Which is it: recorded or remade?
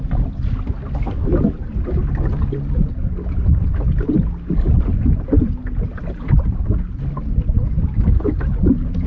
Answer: recorded